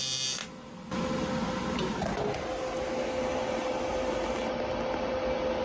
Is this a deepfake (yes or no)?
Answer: no